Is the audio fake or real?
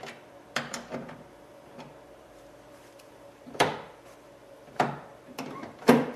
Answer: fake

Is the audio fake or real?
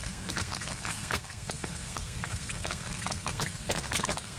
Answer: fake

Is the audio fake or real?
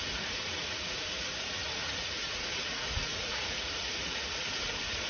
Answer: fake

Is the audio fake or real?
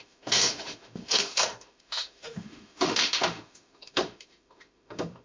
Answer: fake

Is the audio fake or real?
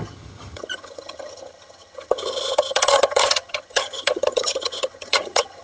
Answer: fake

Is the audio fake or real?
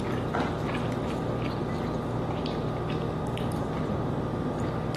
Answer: real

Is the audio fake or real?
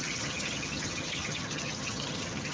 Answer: fake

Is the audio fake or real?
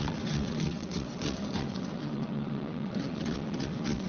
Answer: fake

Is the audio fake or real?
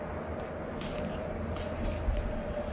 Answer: real